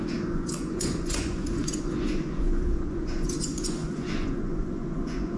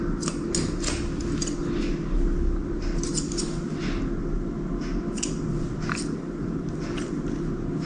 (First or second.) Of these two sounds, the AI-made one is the first